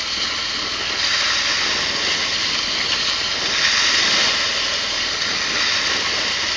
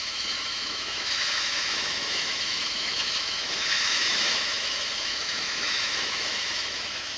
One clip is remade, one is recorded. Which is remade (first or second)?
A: second